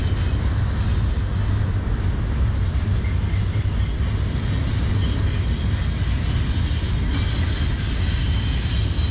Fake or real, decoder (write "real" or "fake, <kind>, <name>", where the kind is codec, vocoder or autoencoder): real